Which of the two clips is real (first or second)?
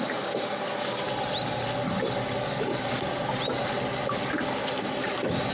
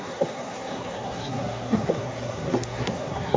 first